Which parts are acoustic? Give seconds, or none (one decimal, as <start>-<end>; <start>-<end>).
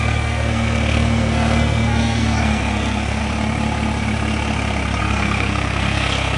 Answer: 3.2-5.0